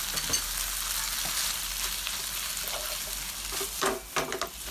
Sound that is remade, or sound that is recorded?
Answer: recorded